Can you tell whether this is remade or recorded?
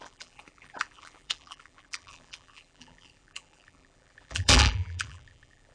remade